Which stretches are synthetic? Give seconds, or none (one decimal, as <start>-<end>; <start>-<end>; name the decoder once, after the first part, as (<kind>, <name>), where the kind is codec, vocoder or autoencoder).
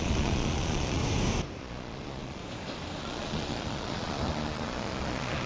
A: 0.0-1.0 (vocoder, Vocos); 1.6-2.4; 3.0-5.5